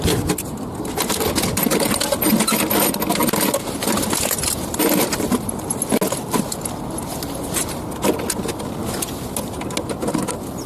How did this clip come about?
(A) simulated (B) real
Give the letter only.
B